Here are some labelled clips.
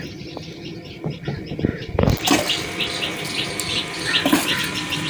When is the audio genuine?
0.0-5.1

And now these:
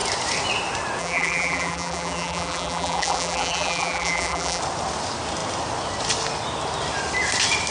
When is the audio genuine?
0.0-1.0; 4.6-7.7

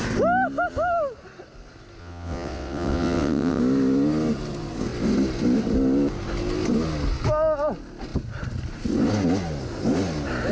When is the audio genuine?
0.0-2.0; 3.6-10.5

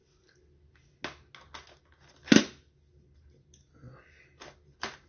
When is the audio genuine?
0.0-5.1